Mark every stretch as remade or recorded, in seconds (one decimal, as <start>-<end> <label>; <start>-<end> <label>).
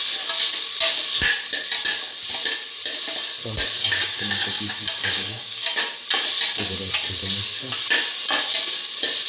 0.0-3.8 recorded; 3.8-5.8 remade; 5.8-9.3 recorded